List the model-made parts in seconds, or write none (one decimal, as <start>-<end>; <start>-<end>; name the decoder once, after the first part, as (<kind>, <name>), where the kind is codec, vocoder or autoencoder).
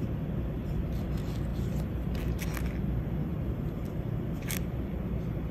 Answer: 1.5-2.2 (vocoder, BigVGAN v2); 3.3-5.0